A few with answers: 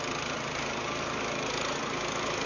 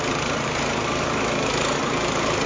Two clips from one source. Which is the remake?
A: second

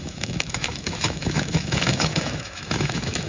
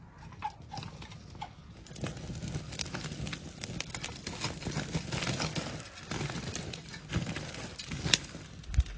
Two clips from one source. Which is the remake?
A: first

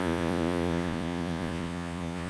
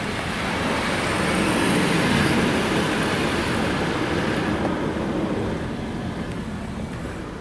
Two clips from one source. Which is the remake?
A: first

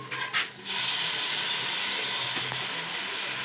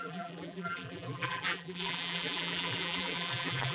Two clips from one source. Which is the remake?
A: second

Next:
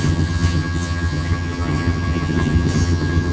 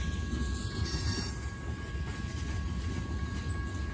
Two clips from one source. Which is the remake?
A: first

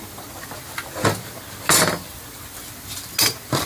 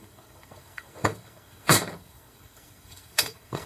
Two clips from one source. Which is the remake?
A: second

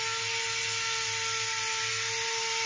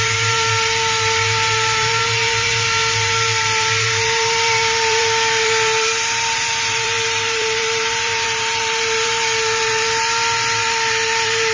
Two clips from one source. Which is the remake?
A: second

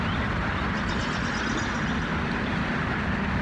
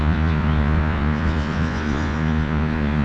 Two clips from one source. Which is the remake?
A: second